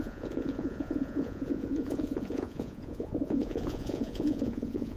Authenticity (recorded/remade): remade